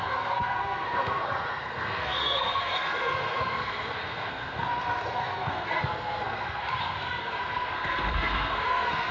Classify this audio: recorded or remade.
remade